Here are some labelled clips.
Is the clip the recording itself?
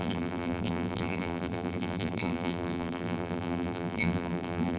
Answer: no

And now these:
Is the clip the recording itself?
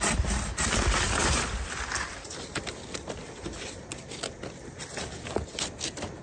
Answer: yes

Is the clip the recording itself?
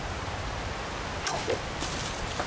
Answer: no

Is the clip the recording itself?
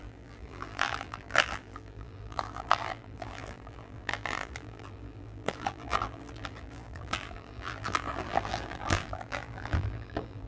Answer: no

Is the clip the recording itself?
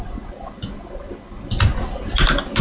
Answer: yes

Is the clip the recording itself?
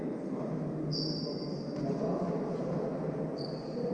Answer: yes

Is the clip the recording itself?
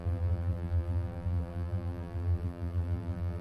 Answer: no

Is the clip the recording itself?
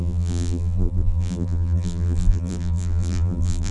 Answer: no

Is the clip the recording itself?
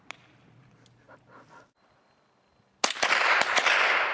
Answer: yes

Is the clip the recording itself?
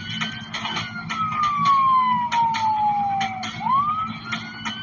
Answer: yes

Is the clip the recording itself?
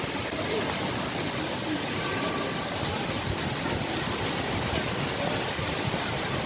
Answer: yes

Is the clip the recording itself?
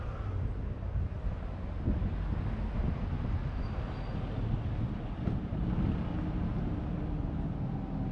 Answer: yes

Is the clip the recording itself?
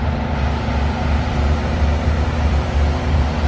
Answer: no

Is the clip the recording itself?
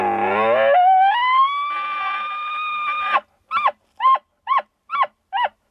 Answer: yes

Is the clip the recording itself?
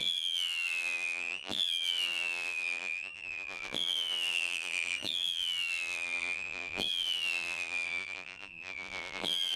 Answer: no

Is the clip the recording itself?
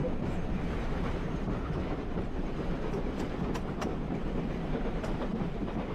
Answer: yes